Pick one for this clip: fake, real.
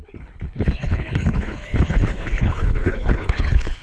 fake